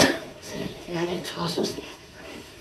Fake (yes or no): yes